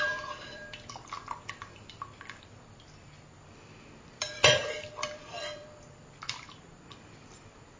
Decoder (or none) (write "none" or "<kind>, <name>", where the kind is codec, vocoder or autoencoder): vocoder, BigVGAN v2